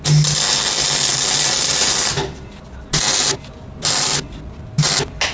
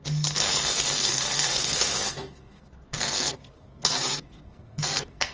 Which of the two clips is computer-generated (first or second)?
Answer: second